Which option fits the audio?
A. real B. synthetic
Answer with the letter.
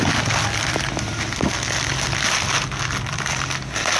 A